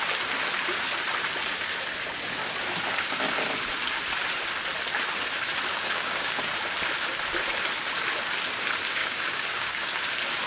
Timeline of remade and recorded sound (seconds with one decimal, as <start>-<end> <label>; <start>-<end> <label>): 0.0-5.7 recorded; 5.7-6.5 remade; 6.5-9.0 recorded; 9.0-10.1 remade; 10.1-10.5 recorded